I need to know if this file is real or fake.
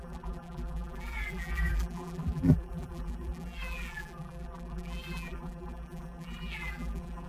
fake